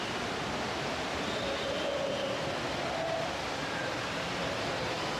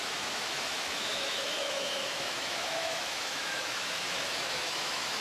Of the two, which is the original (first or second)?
first